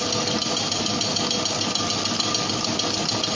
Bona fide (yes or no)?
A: yes